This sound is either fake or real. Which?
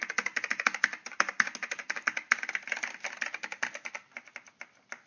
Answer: real